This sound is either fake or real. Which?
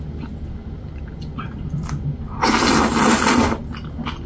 real